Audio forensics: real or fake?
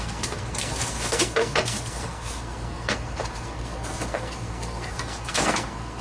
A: fake